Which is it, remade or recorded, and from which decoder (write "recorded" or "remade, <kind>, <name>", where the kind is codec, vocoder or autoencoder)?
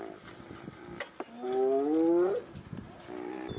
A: recorded